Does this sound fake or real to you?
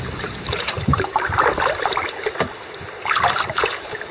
fake